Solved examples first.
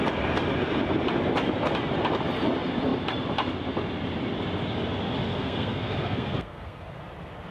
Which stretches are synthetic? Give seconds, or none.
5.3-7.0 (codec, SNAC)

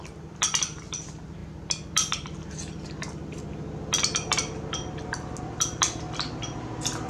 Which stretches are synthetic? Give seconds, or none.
none

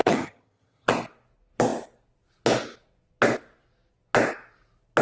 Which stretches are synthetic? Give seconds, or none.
0.0-0.9 (vocoder, HiFi-GAN)

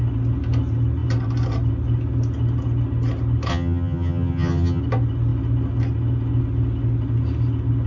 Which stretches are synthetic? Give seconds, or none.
3.5-4.8 (vocoder, HiFi-GAN)

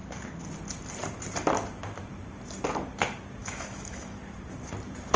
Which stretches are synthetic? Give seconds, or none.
3.4-4.2 (autoencoder, DAC-VAE)

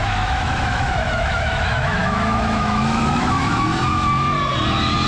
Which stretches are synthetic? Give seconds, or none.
0.0-3.7 (autoencoder, DAC-VAE)